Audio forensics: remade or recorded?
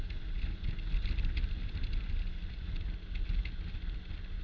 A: recorded